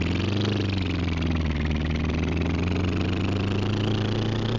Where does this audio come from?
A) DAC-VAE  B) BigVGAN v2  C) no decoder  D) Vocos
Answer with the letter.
C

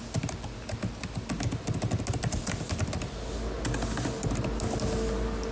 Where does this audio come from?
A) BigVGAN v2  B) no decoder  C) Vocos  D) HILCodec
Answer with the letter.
B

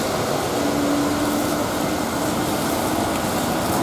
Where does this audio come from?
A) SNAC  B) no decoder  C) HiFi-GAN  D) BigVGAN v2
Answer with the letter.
B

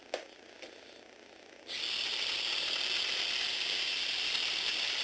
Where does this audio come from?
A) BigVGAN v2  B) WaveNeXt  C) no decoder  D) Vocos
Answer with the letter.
C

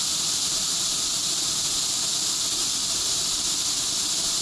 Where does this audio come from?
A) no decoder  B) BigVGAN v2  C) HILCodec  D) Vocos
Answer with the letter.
A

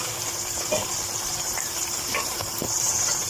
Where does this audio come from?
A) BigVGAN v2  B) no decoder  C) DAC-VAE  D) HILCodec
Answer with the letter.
A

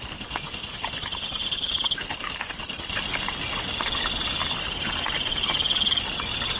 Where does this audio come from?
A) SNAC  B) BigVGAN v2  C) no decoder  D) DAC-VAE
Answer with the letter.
C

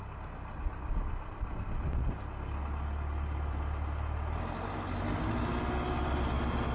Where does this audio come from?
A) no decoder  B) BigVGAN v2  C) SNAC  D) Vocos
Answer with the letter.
A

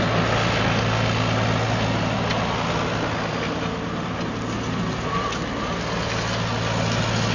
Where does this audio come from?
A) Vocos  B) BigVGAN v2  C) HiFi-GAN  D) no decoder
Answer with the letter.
D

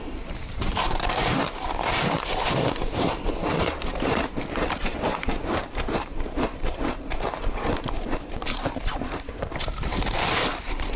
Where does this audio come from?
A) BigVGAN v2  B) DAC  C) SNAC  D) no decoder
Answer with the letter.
A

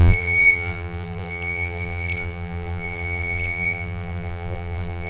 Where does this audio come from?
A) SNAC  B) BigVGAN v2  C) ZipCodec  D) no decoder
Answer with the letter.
B